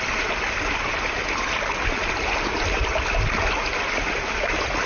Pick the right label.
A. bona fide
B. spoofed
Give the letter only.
A